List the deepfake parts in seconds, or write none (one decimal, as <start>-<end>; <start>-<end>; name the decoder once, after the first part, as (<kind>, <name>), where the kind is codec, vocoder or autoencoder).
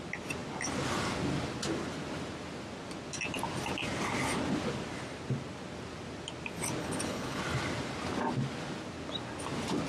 6.8-7.4 (codec, HILCodec)